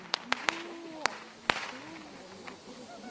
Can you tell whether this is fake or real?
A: real